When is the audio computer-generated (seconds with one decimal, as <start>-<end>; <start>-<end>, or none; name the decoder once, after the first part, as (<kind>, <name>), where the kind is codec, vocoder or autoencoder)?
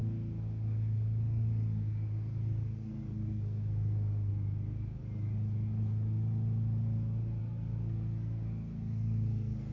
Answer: 0.0-4.3 (codec, SNAC); 7.4-9.7